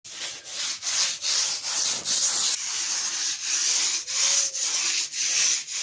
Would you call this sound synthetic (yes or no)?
no